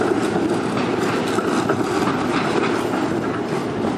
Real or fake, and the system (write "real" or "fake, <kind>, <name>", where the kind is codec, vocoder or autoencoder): real